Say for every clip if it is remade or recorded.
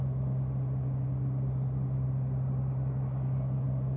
recorded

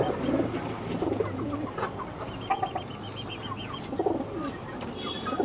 recorded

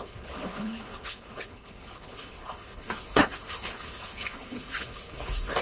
remade